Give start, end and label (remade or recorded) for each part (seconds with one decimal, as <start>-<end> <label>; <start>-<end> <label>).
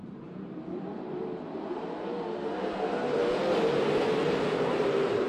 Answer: 0.0-2.1 remade; 2.1-4.1 recorded; 4.1-5.3 remade